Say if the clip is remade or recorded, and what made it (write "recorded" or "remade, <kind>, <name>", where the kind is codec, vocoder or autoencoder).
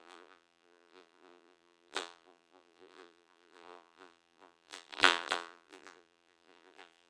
remade, vocoder, BigVGAN v2